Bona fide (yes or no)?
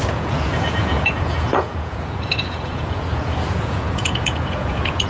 no